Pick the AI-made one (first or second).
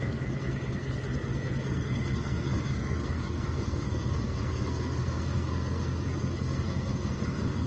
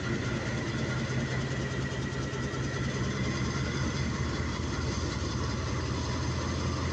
first